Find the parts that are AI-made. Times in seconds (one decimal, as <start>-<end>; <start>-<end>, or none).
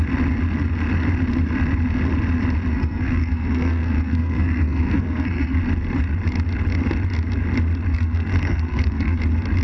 2.7-5.6; 7.9-9.2